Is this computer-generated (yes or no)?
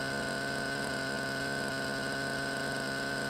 no